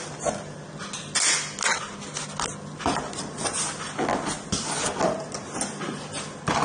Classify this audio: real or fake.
real